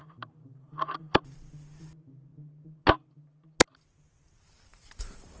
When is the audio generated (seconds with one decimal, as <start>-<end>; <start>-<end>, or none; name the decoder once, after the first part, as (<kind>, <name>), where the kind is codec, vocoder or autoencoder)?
0.0-1.2 (vocoder, BigVGAN v2); 4.7-5.4